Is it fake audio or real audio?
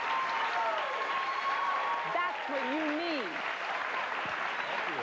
real